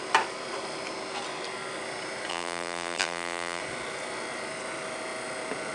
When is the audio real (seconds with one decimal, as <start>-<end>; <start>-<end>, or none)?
0.0-2.3; 3.6-5.7